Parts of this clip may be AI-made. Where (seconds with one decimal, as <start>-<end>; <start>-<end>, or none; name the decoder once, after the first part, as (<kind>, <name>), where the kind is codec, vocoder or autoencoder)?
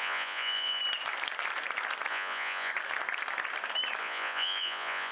0.0-0.8 (vocoder, Vocos); 2.1-2.7; 4.0-5.1